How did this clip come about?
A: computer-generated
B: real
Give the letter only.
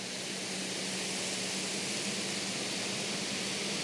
B